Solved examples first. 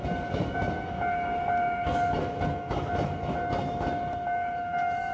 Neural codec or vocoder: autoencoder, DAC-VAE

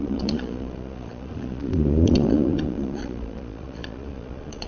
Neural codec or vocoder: vocoder, Vocos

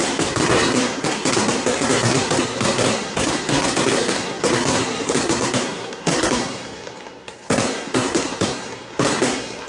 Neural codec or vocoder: codec, SNAC